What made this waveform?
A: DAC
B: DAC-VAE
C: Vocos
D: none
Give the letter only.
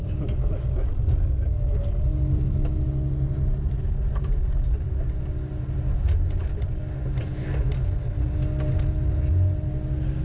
D